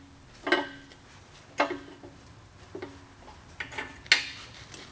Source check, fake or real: real